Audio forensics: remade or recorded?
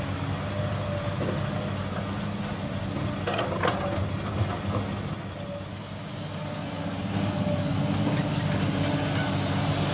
recorded